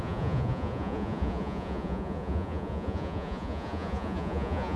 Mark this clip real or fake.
fake